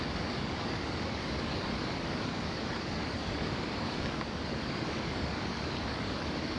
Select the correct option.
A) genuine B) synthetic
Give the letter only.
B